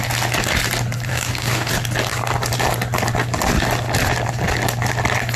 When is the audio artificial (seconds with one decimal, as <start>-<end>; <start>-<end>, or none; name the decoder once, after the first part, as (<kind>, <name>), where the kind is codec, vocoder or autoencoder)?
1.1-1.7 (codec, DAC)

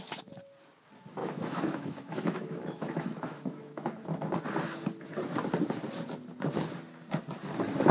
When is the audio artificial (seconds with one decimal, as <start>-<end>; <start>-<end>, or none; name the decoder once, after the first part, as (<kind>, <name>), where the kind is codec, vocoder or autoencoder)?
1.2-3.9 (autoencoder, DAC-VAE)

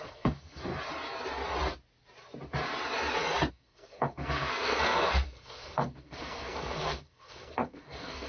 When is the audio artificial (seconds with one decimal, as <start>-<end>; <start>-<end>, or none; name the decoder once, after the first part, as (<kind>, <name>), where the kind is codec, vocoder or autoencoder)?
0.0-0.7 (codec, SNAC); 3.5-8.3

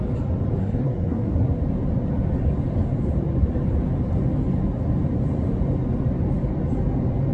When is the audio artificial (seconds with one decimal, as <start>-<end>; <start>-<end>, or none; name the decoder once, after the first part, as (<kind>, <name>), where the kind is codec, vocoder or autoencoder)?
0.6-1.6 (codec, SNAC)

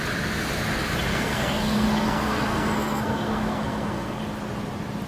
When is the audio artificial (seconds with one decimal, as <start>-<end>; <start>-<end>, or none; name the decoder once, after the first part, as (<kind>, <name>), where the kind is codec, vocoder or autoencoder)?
1.1-4.2 (codec, SNAC)

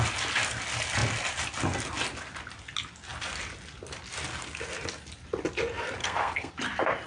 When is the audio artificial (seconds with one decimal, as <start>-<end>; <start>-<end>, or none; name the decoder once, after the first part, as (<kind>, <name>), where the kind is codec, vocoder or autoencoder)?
6.0-6.5 (codec, SNAC)